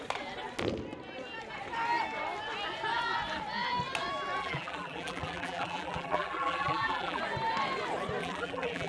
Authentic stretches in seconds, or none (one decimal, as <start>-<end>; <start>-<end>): 0.0-4.4; 7.2-8.2